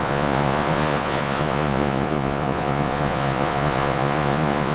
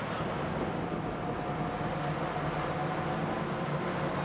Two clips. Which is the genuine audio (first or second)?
second